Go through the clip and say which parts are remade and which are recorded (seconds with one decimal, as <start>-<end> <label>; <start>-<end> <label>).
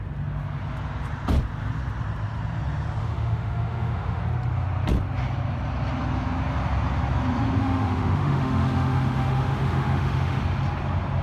0.0-3.0 recorded; 3.0-4.2 remade; 4.2-7.6 recorded; 7.6-10.4 remade; 10.4-11.2 recorded